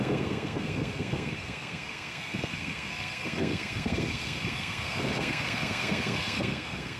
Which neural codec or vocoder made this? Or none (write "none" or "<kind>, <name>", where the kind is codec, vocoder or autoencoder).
codec, SNAC